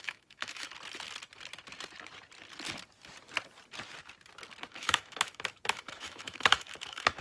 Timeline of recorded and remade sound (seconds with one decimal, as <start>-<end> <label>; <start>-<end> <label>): 0.0-0.7 remade; 0.7-4.7 recorded; 4.7-7.2 remade